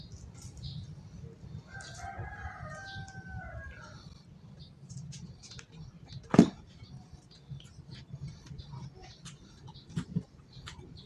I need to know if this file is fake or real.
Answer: real